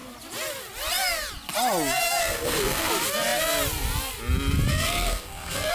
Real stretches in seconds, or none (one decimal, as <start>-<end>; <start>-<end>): 0.0-2.2; 2.9-4.7